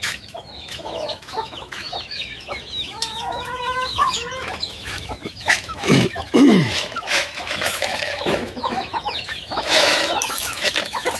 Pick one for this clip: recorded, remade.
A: remade